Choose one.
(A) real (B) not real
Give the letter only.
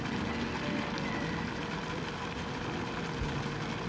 A